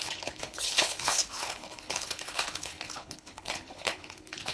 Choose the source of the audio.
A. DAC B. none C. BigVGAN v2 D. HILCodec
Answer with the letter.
D